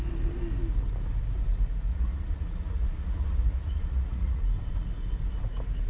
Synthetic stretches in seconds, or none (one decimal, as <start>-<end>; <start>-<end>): 1.9-4.4